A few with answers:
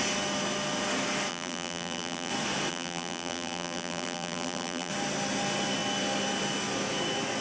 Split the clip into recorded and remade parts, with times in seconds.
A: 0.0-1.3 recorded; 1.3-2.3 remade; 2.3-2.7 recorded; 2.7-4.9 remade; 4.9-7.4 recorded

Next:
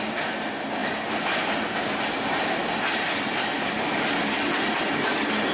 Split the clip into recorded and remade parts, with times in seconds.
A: 0.0-5.5 recorded

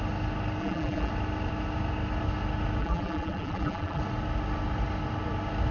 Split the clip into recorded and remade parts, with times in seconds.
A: 0.0-0.6 recorded; 0.6-1.1 remade; 1.1-2.8 recorded; 2.8-4.0 remade; 4.0-5.7 recorded

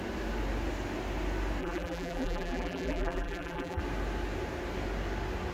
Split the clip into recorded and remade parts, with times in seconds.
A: 0.0-1.6 recorded; 1.6-3.8 remade; 3.8-5.5 recorded